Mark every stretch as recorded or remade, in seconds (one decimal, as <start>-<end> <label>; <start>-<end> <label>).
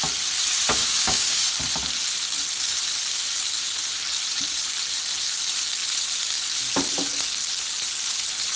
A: 0.0-0.8 recorded; 0.8-1.4 remade; 1.4-8.6 recorded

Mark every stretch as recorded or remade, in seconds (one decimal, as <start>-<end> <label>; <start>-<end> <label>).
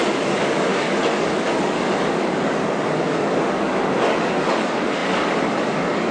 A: 0.0-6.1 remade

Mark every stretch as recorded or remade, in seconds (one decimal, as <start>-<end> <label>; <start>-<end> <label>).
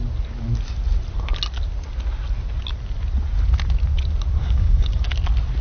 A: 0.0-4.4 recorded; 4.4-5.0 remade; 5.0-5.6 recorded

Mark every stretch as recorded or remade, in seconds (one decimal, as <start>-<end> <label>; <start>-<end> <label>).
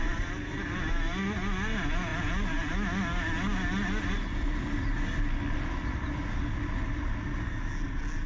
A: 0.0-8.3 recorded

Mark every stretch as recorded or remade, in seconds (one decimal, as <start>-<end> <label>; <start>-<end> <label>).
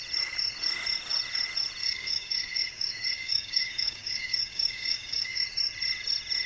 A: 0.0-1.8 recorded; 1.8-5.4 remade; 5.4-6.5 recorded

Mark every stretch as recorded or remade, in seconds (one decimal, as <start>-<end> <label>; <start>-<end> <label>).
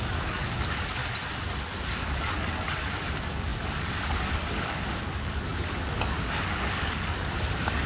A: 0.0-1.0 remade; 1.0-1.9 recorded; 1.9-7.9 remade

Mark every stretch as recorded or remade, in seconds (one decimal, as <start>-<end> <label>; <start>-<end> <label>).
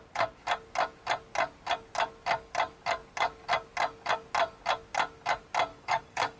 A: 0.0-5.7 recorded; 5.7-6.4 remade